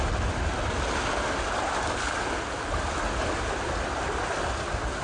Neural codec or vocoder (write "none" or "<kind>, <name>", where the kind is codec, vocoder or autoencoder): none